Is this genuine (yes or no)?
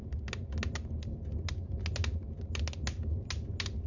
yes